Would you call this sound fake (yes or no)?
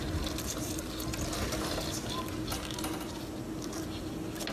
no